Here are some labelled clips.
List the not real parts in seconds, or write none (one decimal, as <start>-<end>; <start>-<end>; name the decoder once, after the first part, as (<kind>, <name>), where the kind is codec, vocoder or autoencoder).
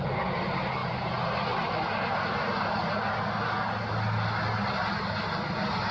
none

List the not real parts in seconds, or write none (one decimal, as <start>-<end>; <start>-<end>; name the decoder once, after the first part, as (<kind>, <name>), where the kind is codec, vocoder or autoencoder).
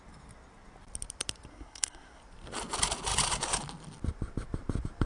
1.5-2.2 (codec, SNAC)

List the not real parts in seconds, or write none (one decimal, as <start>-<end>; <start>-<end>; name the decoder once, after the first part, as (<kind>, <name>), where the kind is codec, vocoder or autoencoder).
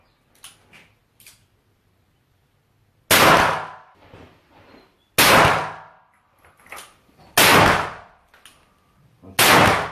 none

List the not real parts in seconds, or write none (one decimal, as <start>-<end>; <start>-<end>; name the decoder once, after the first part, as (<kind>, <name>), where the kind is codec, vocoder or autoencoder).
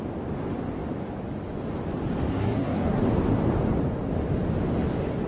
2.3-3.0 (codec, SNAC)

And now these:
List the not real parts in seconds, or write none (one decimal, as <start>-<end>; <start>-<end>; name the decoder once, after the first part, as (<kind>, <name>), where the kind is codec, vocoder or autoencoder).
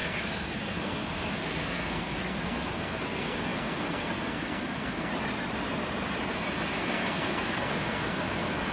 0.0-5.1 (codec, SNAC); 6.8-8.7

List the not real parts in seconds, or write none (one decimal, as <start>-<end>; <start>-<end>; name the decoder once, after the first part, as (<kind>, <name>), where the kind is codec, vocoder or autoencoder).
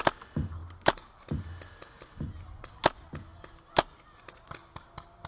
none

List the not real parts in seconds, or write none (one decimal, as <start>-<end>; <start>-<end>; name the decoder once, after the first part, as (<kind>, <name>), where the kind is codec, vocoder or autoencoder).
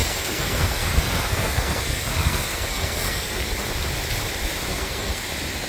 0.0-3.4 (codec, SNAC); 4.7-5.2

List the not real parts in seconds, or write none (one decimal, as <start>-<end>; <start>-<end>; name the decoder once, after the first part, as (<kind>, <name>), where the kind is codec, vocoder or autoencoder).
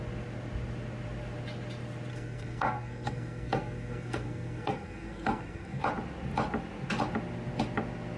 2.1-5.8 (codec, SNAC)